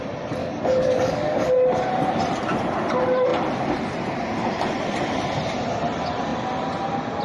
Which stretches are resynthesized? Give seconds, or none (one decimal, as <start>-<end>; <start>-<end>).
0.4-1.5